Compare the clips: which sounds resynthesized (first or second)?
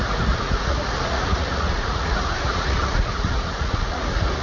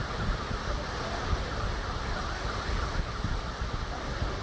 first